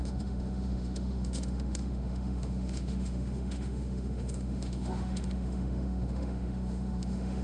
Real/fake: fake